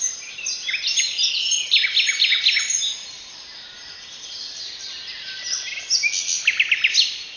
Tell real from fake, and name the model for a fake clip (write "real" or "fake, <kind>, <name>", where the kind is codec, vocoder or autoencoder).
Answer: real